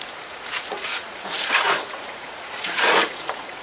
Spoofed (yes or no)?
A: yes